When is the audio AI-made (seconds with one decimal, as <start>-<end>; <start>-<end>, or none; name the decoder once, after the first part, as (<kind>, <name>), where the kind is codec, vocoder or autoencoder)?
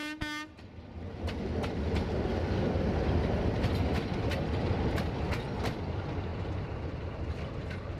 none